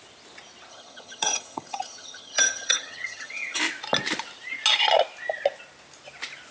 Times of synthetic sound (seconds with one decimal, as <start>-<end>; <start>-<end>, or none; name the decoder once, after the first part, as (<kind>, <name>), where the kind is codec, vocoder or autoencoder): 0.7-3.6 (vocoder, HiFi-GAN)